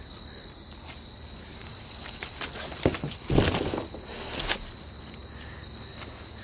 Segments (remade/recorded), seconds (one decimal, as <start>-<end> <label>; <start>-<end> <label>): 0.0-0.8 recorded; 0.8-1.9 remade; 1.9-6.4 recorded